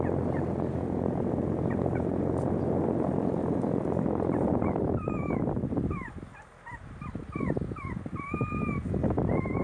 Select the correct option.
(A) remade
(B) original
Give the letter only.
B